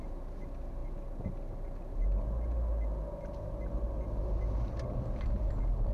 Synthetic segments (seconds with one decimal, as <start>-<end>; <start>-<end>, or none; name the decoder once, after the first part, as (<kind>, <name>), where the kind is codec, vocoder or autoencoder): none